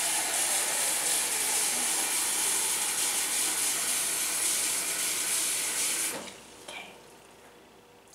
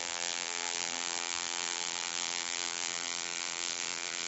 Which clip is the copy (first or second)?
second